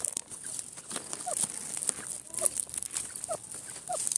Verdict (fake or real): real